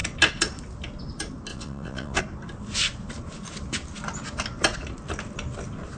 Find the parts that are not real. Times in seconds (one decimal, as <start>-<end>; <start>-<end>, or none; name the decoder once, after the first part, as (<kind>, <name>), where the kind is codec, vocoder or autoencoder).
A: 1.5-2.2 (vocoder, WaveNeXt)